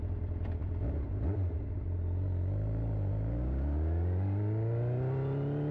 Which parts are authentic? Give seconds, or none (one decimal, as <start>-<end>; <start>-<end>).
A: 0.0-5.7